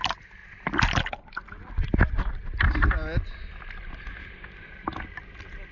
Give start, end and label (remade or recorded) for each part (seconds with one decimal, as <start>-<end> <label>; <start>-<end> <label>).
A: 0.0-5.7 recorded